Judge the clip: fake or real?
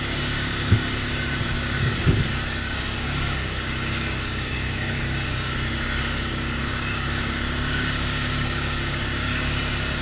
fake